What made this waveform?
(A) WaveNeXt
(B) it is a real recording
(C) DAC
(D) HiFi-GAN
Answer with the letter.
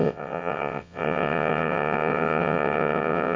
A